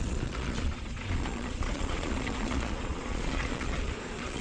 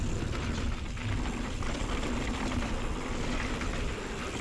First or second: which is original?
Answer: second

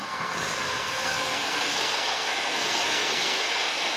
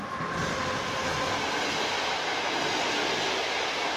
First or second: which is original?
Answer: second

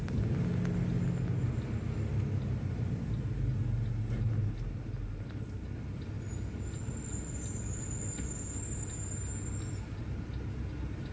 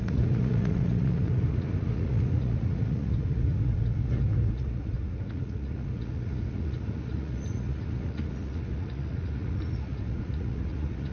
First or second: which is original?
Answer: first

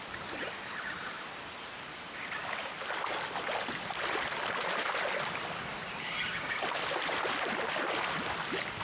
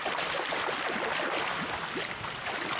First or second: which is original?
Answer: second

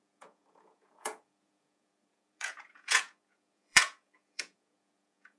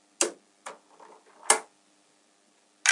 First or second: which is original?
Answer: second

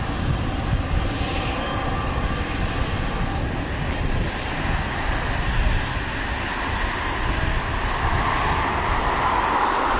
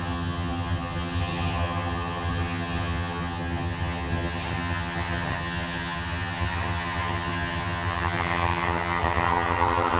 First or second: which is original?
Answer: first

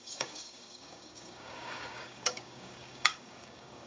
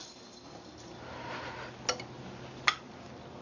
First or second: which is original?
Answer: second